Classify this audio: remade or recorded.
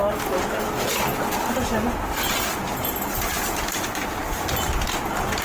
recorded